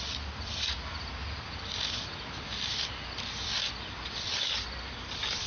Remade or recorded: remade